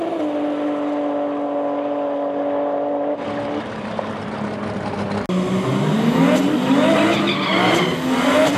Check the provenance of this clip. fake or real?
real